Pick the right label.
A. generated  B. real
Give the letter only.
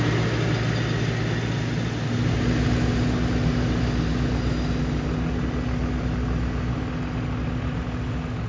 B